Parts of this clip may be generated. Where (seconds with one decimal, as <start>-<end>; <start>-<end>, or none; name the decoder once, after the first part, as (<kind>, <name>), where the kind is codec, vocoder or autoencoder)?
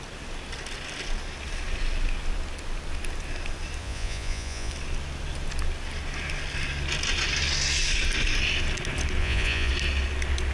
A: 3.8-4.7 (vocoder, Vocos); 9.2-9.7